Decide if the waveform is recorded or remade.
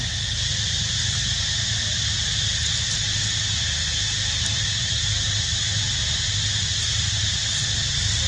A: recorded